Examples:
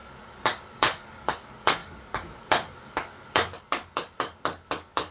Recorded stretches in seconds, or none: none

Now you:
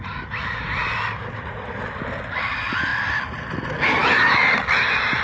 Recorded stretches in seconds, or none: 0.0-5.2

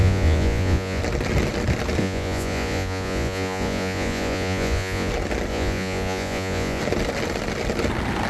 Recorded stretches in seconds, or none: 1.0-2.0; 5.1-5.5; 6.8-8.3

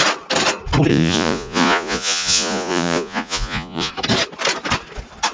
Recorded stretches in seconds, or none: 0.0-0.9; 3.9-5.3